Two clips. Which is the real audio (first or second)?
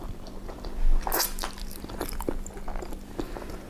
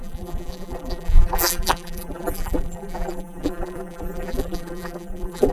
first